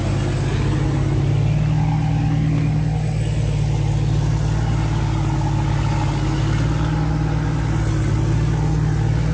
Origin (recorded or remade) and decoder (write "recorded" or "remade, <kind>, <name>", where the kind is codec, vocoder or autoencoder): recorded